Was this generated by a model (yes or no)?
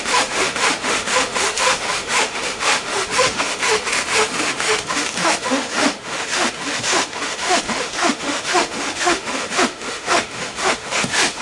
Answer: yes